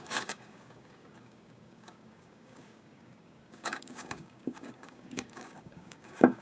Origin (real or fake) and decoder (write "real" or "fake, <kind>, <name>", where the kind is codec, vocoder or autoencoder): fake, codec, DAC